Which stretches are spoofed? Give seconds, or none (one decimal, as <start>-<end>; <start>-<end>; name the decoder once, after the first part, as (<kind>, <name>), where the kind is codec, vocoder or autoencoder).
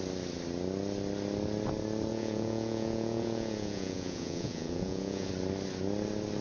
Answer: 2.1-5.3 (vocoder, Vocos)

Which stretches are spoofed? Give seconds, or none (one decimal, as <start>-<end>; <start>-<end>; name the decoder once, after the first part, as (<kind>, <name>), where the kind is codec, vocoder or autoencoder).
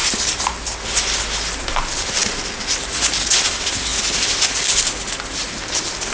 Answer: none